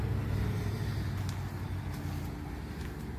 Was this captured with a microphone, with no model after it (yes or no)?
yes